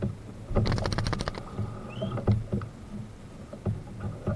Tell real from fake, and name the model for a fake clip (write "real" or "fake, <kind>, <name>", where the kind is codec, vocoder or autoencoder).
real